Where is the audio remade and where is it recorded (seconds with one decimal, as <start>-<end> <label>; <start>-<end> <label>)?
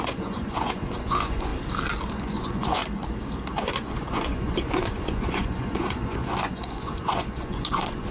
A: 0.0-1.5 remade; 1.5-2.1 recorded; 2.1-2.8 remade; 2.8-3.5 recorded; 3.5-8.1 remade